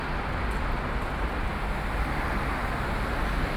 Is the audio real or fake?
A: real